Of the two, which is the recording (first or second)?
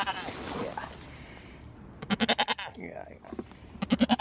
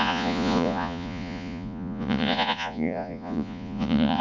first